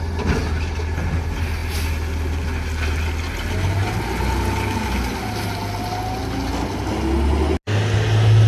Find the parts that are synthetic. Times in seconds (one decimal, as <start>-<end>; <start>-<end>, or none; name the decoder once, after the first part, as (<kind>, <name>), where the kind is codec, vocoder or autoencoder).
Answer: none